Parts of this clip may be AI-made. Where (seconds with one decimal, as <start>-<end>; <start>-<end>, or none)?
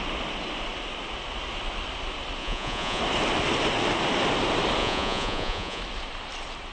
2.4-3.0; 4.8-5.8